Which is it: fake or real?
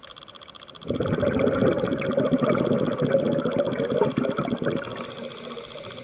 real